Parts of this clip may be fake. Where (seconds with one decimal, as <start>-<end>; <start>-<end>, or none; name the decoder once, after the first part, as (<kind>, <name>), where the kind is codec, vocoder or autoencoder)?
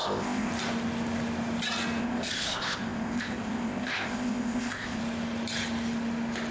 0.0-0.5 (codec, ZipCodec); 2.0-5.0